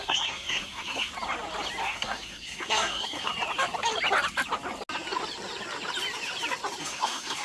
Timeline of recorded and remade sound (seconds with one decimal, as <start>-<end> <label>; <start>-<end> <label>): 0.0-1.1 remade; 1.1-1.8 recorded; 1.8-3.3 remade; 3.3-6.8 recorded; 6.8-7.4 remade